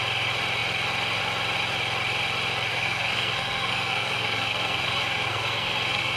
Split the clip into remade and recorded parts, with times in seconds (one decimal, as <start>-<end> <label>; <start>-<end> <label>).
0.0-2.7 recorded; 2.7-6.2 remade